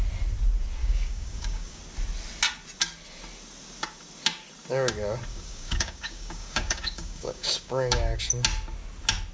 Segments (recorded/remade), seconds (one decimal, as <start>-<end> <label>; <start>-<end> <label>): 0.0-0.8 recorded; 0.8-1.8 remade; 1.8-5.3 recorded; 5.3-8.2 remade; 8.2-9.3 recorded